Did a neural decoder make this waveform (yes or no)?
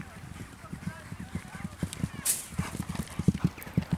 no